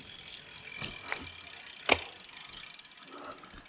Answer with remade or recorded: recorded